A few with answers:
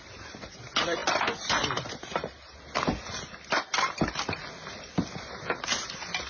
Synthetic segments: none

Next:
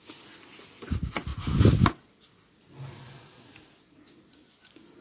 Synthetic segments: none

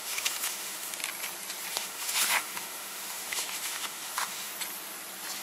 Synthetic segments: 0.0-1.0 (autoencoder, DAC-VAE); 1.7-4.5

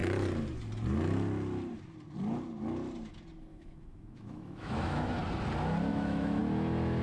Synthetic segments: 3.5-5.1 (autoencoder, DAC-VAE); 5.9-6.4

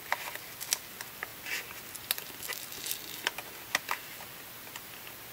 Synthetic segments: none